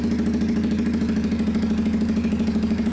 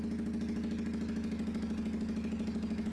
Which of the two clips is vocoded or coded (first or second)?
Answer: first